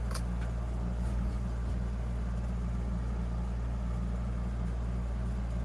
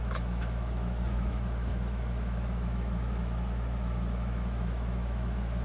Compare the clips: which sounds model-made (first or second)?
second